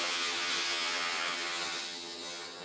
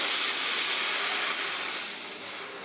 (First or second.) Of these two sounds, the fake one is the first